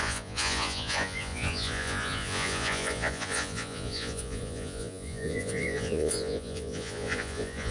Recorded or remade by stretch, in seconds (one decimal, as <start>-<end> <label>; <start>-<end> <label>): 0.0-7.7 remade